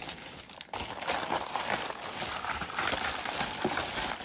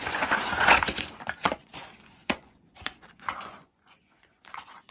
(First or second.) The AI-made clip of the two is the second